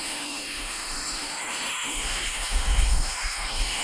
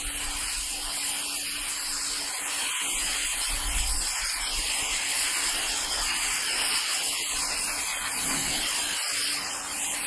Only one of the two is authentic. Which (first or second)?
second